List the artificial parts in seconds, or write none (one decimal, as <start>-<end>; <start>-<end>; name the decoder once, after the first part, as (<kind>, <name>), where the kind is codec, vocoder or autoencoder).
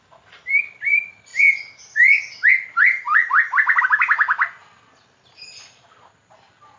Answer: none